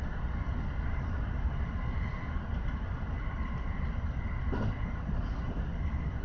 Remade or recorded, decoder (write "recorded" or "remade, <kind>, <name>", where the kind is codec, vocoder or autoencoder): recorded